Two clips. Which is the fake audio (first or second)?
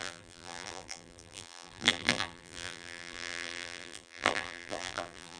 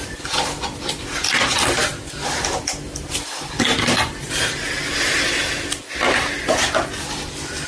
first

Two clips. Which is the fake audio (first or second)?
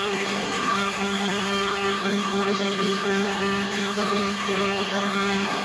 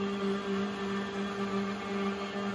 first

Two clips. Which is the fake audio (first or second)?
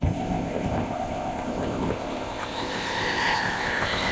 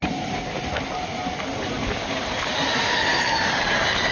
first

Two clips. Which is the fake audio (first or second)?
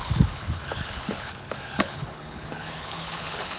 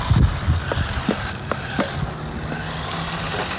first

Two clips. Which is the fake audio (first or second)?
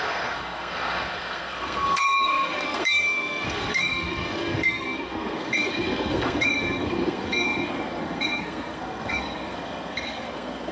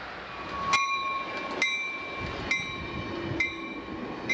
first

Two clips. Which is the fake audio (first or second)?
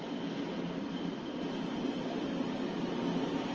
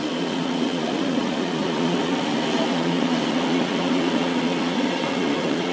second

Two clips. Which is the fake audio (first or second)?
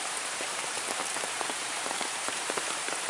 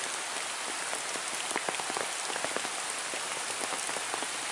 first